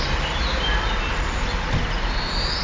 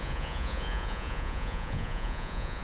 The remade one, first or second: second